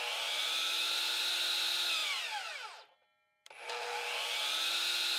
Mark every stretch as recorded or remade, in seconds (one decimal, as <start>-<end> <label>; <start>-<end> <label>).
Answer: 0.0-5.2 recorded